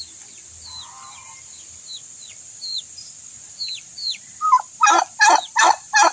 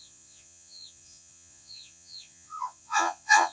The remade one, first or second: second